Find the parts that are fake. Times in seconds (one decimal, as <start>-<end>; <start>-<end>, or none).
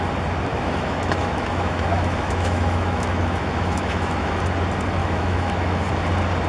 0.5-4.4; 5.0-5.9